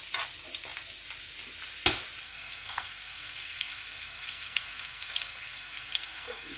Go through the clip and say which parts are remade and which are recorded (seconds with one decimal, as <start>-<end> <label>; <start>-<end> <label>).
0.0-2.2 recorded; 2.2-6.6 remade